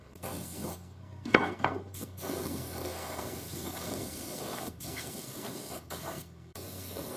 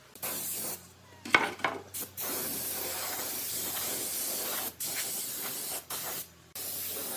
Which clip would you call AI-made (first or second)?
first